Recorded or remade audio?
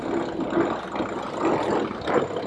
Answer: recorded